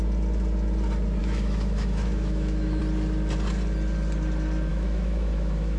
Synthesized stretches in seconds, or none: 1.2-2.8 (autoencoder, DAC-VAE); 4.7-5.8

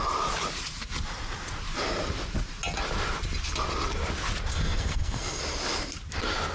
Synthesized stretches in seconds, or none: 4.5-5.4 (codec, SNAC)